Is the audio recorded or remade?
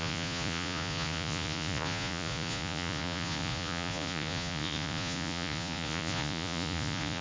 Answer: remade